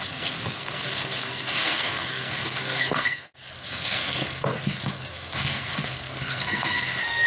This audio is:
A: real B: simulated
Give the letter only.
B